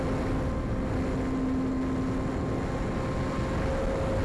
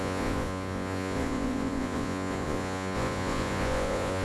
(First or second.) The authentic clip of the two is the first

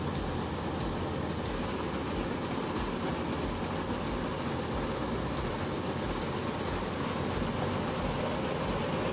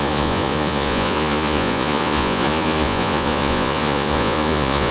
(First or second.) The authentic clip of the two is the first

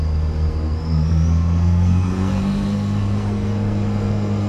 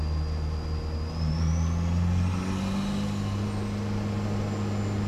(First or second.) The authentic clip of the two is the second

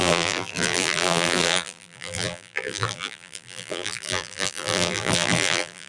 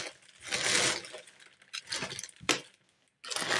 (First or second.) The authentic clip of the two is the second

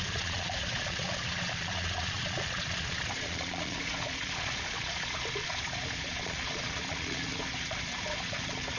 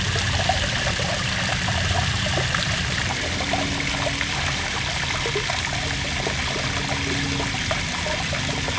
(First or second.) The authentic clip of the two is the second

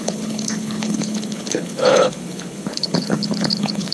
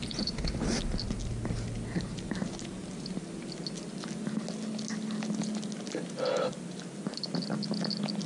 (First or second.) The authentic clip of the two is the second